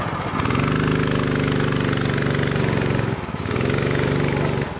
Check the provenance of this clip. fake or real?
real